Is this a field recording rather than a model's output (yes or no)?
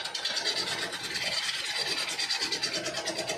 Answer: yes